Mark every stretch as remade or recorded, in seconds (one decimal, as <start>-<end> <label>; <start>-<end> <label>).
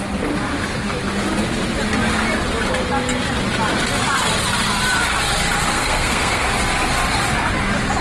0.0-5.7 recorded; 5.7-6.5 remade; 6.5-8.0 recorded